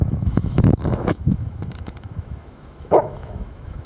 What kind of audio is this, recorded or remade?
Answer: remade